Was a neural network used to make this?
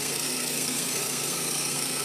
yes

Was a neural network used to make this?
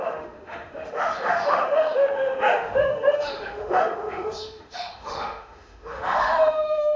yes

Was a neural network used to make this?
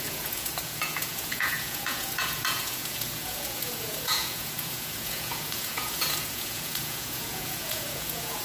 yes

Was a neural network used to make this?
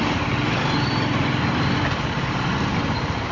no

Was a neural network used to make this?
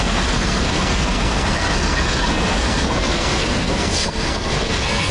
yes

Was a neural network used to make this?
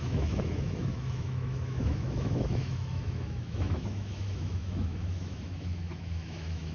yes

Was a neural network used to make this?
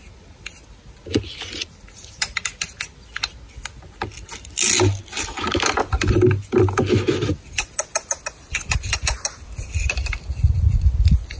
no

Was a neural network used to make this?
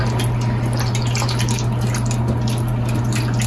no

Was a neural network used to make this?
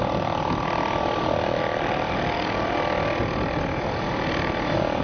no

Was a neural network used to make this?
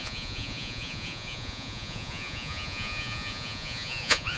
yes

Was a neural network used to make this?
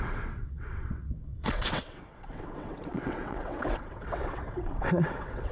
yes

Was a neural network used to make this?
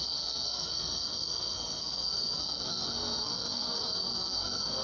yes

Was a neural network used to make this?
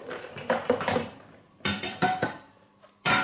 yes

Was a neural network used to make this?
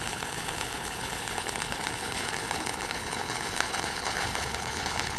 yes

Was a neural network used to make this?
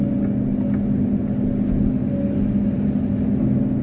no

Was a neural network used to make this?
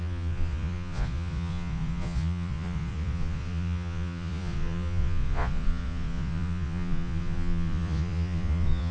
yes